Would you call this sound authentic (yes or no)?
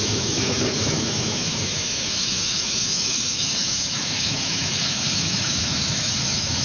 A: no